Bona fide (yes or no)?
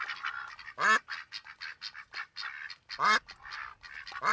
yes